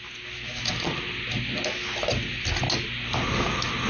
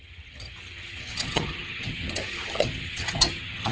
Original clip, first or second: first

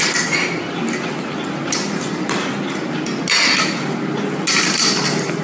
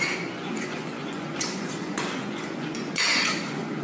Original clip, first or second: first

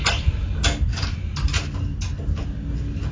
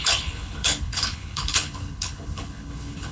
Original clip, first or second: first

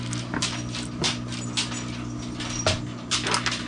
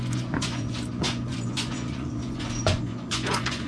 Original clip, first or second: first